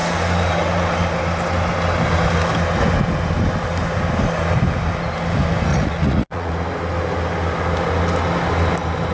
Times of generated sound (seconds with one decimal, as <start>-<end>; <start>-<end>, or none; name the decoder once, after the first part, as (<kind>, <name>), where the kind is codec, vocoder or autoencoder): 5.7-6.5 (vocoder, Vocos)